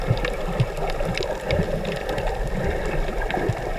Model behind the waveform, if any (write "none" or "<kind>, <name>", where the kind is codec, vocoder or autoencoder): vocoder, BigVGAN v2